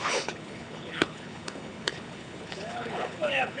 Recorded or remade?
remade